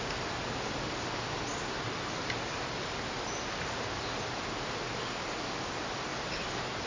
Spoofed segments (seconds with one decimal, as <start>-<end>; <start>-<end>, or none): none